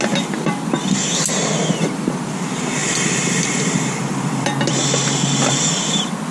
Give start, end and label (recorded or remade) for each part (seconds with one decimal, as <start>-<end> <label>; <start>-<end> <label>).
0.0-2.8 recorded; 2.8-4.6 remade; 4.6-6.3 recorded